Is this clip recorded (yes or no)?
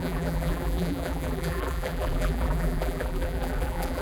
no